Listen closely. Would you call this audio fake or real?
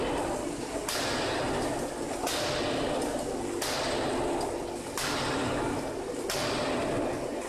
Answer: real